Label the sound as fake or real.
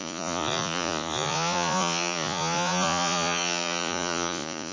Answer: fake